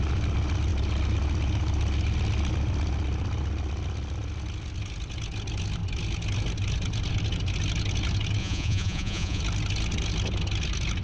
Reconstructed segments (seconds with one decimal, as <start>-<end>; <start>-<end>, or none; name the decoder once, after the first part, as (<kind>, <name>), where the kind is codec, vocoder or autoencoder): 8.4-9.4 (vocoder, Vocos)

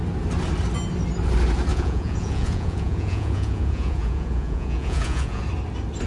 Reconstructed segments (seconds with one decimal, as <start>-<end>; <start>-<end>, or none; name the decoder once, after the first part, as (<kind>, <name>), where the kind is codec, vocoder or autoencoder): 1.7-5.4 (vocoder, Vocos)

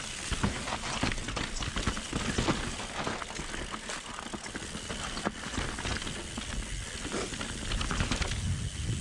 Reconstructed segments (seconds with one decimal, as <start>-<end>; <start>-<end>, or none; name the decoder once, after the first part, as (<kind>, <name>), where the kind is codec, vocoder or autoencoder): none

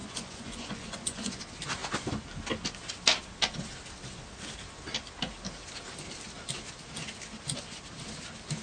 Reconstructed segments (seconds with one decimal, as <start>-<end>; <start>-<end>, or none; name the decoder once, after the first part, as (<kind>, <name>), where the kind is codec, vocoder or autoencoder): 0.0-1.4 (vocoder, Vocos)

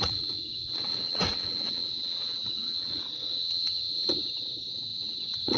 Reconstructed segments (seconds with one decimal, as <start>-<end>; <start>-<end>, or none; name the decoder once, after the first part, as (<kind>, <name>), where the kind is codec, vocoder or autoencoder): 0.0-5.6 (vocoder, WaveNeXt)

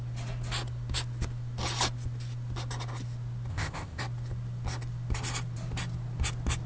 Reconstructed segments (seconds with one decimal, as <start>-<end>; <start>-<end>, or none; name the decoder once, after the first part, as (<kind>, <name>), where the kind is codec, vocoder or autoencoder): 3.5-4.0 (codec, ZipCodec)